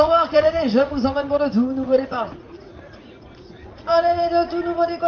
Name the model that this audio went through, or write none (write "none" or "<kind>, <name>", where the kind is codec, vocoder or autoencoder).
vocoder, Vocos